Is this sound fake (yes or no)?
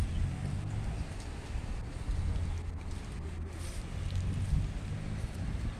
no